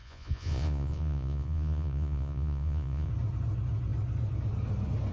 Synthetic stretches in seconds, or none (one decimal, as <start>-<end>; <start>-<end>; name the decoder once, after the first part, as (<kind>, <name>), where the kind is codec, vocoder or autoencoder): 0.0-3.1 (vocoder, Vocos)